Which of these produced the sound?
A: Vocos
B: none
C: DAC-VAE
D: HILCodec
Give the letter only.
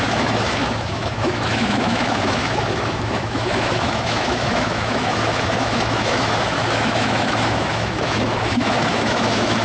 C